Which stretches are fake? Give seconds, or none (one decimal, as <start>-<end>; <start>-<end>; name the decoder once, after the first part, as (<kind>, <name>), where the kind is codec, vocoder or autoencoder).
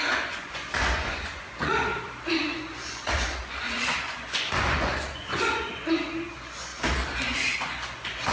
0.0-1.9 (vocoder, Vocos); 2.4-6.7; 7.4-8.3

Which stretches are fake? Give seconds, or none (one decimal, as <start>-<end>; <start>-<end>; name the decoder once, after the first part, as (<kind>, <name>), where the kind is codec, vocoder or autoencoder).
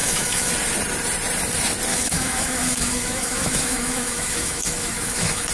0.0-0.5 (autoencoder, DAC-VAE); 1.9-5.5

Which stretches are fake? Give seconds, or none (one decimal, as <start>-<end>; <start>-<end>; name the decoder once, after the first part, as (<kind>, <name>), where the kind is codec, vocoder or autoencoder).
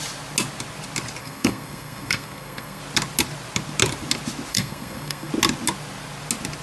1.2-2.8 (codec, SNAC); 4.5-5.3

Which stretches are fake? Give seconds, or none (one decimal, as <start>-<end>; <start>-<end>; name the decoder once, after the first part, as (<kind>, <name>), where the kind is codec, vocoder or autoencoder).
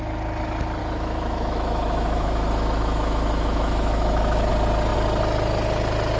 0.8-4.5 (autoencoder, DAC-VAE)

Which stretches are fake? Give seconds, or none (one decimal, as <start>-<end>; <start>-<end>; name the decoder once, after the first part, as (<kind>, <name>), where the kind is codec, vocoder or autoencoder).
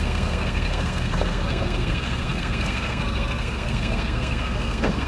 0.0-5.1 (codec, SNAC)